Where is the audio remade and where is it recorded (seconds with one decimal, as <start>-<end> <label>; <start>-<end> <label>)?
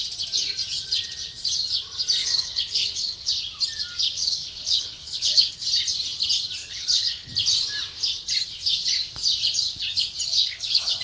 0.0-2.2 recorded; 2.2-3.3 remade; 3.3-4.2 recorded; 4.2-5.5 remade; 5.5-6.6 recorded; 6.6-7.3 remade; 7.3-10.3 recorded; 10.3-11.0 remade